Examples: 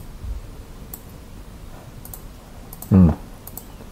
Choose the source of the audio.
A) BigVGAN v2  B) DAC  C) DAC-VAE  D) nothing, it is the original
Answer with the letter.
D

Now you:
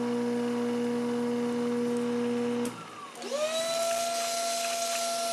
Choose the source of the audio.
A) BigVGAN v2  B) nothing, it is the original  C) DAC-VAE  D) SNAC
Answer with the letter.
B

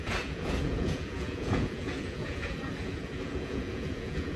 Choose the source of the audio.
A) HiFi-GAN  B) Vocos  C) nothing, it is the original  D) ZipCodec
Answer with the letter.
B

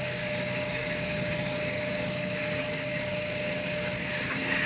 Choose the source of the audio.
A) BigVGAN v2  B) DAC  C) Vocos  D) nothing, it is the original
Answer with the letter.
B